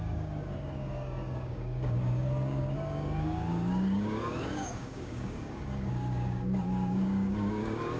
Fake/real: fake